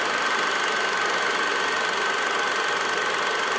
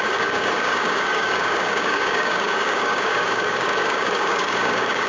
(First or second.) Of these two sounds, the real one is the first